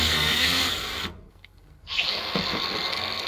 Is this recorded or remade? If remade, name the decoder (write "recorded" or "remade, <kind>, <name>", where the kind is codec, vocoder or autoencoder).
remade, codec, SNAC